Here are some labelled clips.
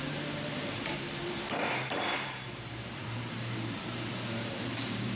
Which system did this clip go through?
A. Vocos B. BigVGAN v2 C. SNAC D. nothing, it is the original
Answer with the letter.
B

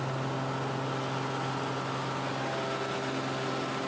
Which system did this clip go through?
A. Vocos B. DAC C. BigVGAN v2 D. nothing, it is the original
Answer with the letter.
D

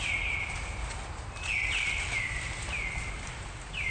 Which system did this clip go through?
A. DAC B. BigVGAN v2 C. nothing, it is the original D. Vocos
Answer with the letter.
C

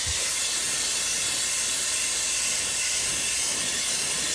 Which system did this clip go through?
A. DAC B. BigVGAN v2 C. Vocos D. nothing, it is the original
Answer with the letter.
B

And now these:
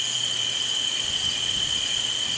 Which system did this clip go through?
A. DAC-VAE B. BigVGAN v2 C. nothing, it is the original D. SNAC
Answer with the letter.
C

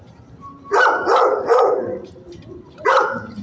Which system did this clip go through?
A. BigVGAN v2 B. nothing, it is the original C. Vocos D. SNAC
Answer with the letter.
A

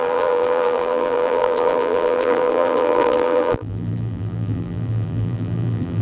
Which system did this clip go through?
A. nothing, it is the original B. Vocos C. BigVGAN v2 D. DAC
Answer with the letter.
C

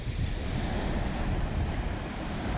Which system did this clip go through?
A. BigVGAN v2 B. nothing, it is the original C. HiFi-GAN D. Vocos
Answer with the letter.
B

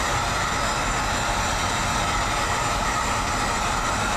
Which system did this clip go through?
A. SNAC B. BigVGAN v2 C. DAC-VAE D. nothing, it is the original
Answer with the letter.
B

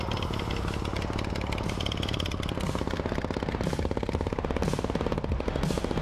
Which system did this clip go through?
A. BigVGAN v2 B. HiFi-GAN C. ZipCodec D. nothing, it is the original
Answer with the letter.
D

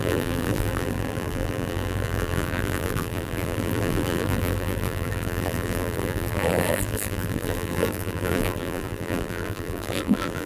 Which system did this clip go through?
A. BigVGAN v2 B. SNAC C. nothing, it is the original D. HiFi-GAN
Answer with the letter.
A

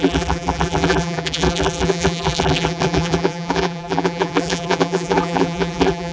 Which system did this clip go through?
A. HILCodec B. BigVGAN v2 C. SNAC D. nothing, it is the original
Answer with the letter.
B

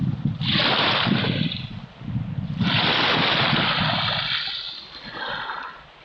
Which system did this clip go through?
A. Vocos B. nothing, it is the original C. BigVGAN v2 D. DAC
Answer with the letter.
B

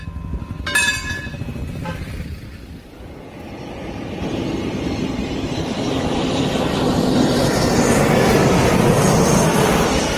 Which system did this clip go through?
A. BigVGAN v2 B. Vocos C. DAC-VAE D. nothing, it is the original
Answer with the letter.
A